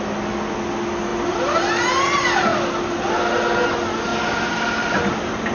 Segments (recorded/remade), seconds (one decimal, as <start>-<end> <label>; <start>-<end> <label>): 0.0-5.5 recorded